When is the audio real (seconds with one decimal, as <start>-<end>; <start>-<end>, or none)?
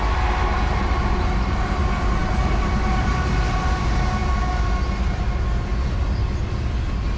0.0-7.2